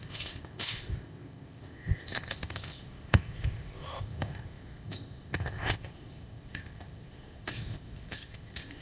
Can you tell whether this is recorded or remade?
remade